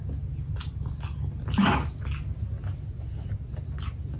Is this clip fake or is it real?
real